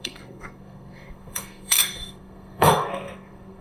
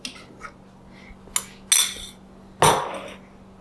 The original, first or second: second